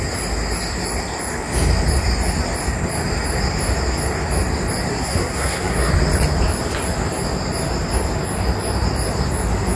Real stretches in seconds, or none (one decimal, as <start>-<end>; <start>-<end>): 0.0-4.9; 5.9-9.8